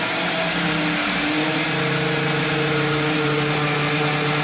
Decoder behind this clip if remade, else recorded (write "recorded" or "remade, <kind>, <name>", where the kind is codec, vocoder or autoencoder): recorded